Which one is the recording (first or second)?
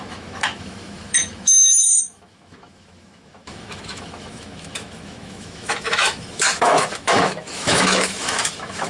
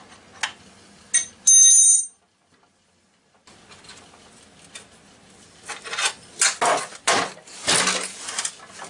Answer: second